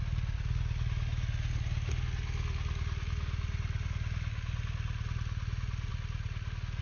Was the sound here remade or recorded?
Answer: recorded